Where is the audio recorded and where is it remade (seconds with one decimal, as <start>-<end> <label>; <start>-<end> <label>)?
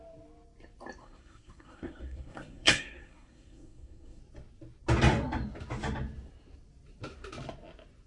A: 0.0-1.0 recorded; 1.0-4.2 remade; 4.2-8.1 recorded